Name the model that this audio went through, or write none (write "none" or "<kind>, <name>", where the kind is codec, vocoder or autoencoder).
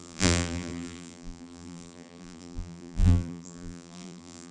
vocoder, BigVGAN v2